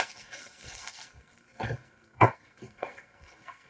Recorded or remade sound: remade